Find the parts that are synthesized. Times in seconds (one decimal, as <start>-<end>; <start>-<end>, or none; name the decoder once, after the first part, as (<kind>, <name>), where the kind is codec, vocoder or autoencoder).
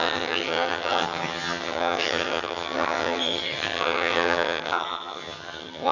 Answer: 0.0-5.9 (vocoder, HiFi-GAN)